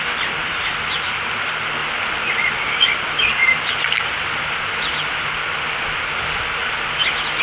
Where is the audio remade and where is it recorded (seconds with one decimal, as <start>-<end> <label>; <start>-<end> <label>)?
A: 0.0-3.4 remade; 3.4-5.5 recorded; 5.5-6.6 remade; 6.6-7.4 recorded